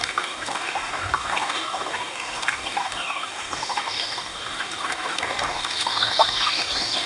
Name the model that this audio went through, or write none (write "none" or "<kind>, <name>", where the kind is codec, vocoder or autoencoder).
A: codec, DAC